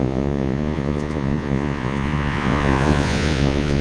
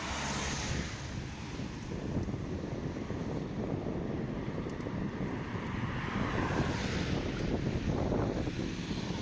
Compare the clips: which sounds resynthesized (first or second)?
first